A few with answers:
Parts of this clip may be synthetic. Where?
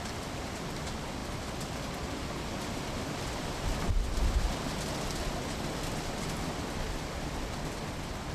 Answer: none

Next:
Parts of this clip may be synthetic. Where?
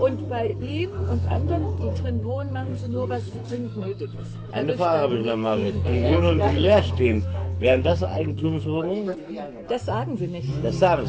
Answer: 0.5-4.5 (codec, SNAC); 5.2-9.3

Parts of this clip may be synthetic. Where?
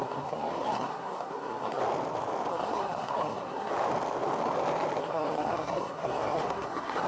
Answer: 0.0-1.8 (codec, SNAC); 2.5-3.7; 5.0-7.1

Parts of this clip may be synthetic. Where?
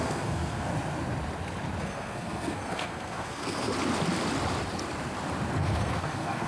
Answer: 0.0-0.7 (codec, SNAC); 1.8-3.7; 5.6-6.5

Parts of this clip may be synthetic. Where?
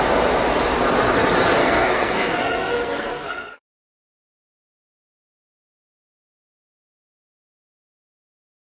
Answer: 1.6-5.4 (codec, SNAC)